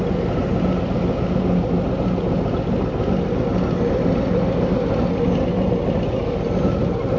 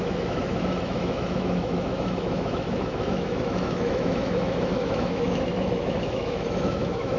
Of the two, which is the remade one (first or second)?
second